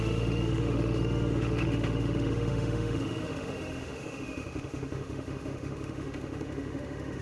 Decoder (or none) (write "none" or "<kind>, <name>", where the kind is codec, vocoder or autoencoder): autoencoder, DAC-VAE